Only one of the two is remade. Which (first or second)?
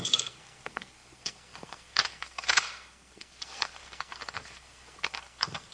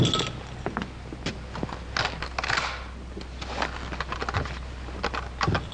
first